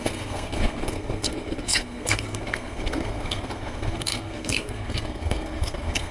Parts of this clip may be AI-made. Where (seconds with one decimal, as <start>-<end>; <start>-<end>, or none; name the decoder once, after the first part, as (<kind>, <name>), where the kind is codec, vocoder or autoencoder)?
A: 0.0-6.1 (codec, SNAC)